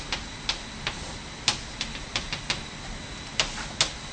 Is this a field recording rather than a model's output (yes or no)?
yes